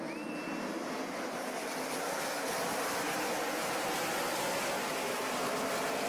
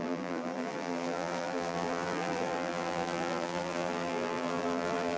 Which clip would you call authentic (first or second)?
first